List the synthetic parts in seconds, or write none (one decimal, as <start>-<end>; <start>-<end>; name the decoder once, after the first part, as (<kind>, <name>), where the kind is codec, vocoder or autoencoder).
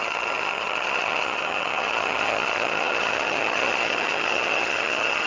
0.0-5.3 (vocoder, HiFi-GAN)